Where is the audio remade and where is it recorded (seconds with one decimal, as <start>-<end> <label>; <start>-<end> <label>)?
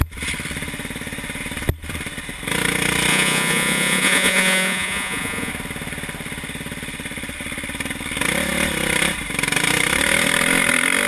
0.0-3.1 recorded; 3.1-5.5 remade; 5.5-11.1 recorded